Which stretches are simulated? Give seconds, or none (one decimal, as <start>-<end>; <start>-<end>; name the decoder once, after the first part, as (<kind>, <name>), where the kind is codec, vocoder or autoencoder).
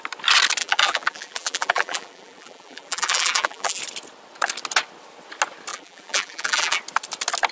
0.6-3.8 (vocoder, BigVGAN v2); 5.7-6.8